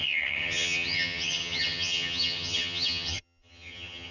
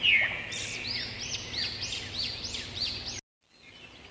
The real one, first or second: second